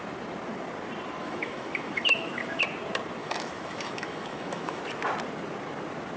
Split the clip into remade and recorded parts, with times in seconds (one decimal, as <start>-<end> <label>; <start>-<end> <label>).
0.0-1.2 recorded; 1.2-2.6 remade; 2.6-3.2 recorded; 3.2-4.8 remade; 4.8-6.2 recorded